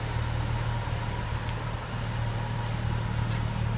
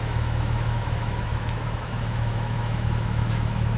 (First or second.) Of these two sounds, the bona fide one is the first